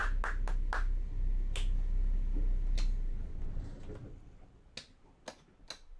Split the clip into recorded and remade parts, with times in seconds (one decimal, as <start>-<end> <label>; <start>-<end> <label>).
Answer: 0.0-6.0 recorded